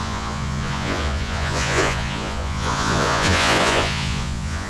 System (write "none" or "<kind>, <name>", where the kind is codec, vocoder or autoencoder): vocoder, Vocos